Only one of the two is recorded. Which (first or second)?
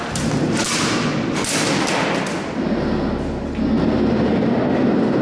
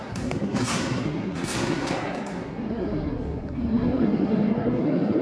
first